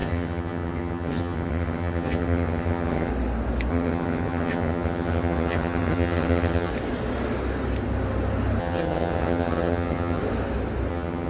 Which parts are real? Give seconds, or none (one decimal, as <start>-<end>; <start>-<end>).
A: 3.1-3.7; 6.7-8.6; 10.2-10.9